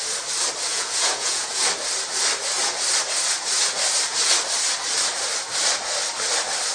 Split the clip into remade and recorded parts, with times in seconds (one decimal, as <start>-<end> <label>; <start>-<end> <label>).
0.0-0.7 recorded; 0.7-1.6 remade; 1.6-6.7 recorded